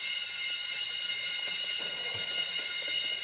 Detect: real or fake fake